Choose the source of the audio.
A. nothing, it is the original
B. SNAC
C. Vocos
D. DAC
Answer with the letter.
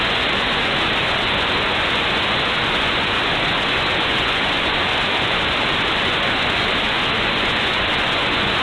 C